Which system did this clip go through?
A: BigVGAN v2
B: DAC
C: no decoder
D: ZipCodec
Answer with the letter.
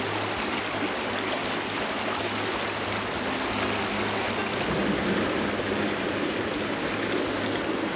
C